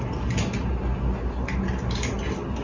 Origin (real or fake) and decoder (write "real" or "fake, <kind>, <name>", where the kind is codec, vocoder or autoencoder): real